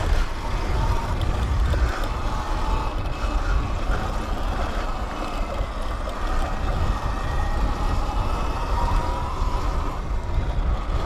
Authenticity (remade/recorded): recorded